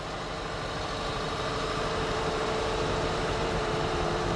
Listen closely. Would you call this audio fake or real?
fake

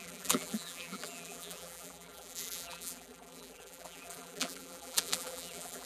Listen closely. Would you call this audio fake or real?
fake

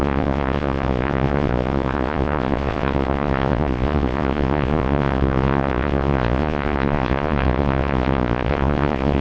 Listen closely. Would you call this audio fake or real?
fake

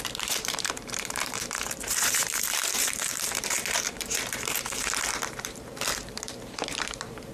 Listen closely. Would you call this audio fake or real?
fake